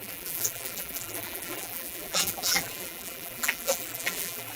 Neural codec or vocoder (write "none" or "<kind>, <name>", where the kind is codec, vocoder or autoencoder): vocoder, BigVGAN v2